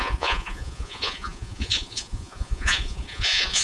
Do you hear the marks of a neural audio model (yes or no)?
yes